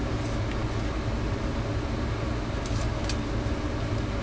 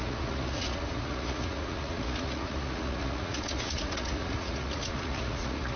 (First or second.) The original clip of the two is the first